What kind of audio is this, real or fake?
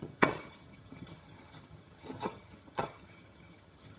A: fake